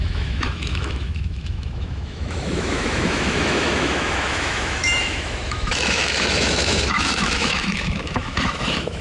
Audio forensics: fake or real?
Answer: fake